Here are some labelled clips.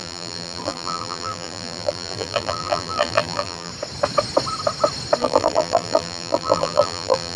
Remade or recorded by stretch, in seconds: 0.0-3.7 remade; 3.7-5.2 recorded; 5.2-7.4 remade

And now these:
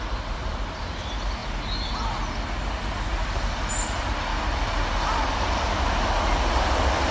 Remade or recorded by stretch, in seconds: 0.0-7.1 recorded

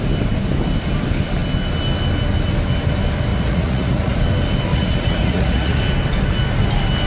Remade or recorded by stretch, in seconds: 0.0-3.3 recorded; 3.3-4.2 remade; 4.2-4.7 recorded; 4.7-5.8 remade; 5.8-7.1 recorded

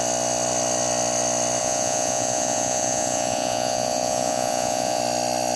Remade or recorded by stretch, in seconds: 0.0-1.6 recorded; 1.6-5.0 remade; 5.0-5.6 recorded